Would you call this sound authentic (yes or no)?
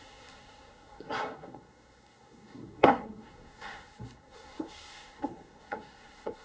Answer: no